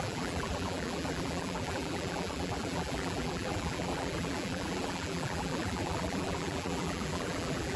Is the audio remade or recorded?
remade